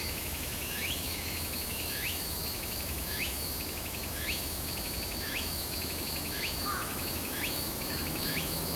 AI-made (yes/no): yes